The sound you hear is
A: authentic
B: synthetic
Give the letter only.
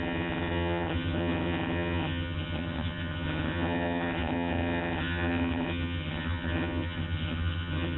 B